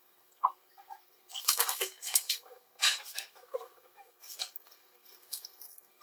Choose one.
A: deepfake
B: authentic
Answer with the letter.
A